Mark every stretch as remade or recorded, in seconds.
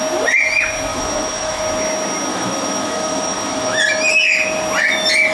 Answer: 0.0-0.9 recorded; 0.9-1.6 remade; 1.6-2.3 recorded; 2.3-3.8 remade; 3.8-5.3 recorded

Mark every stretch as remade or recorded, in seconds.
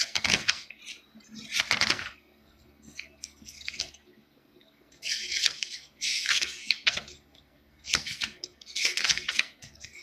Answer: 0.0-0.8 remade; 0.8-1.9 recorded; 1.9-10.0 remade